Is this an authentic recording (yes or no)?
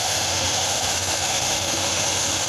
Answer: no